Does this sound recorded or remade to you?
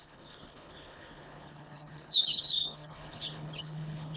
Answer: remade